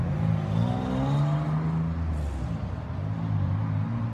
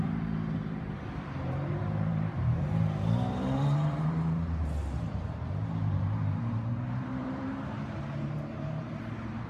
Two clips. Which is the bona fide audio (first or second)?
first